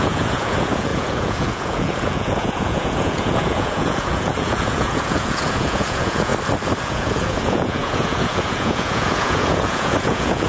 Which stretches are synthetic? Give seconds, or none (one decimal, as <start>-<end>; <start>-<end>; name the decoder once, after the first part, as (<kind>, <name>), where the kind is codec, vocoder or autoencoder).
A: 0.0-6.3 (vocoder, Vocos); 6.8-10.5